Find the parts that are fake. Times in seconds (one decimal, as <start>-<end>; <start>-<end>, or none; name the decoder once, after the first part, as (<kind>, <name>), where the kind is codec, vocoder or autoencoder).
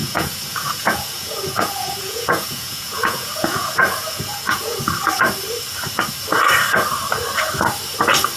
0.0-4.8 (vocoder, Vocos)